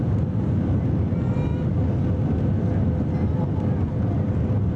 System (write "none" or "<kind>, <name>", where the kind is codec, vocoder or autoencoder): none